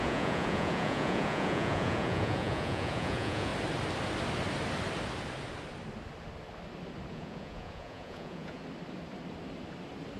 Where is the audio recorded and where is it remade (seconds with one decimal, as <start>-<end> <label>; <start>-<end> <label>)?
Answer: 0.0-3.5 remade; 3.5-7.1 recorded; 7.1-8.6 remade; 8.6-10.2 recorded